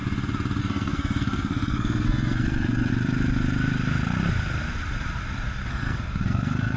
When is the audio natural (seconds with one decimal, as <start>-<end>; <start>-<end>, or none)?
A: 0.0-0.6; 2.9-5.7